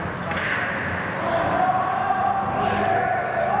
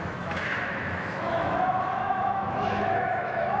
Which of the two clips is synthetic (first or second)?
second